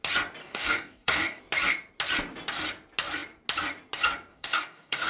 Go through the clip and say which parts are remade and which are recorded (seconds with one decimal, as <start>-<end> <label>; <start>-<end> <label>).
0.0-0.4 recorded; 0.4-1.4 remade; 1.4-4.3 recorded; 4.3-5.1 remade